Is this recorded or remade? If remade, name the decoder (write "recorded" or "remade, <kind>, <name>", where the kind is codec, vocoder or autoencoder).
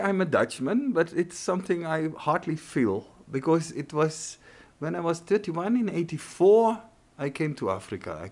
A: recorded